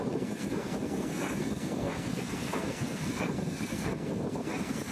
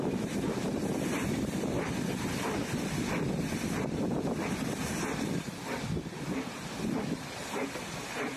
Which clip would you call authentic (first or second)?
second